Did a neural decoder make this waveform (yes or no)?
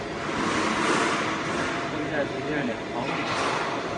no